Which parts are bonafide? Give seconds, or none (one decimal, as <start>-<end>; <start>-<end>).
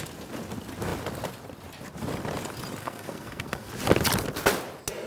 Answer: 0.0-2.8; 3.7-5.1